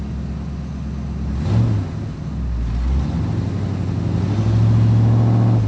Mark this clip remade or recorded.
recorded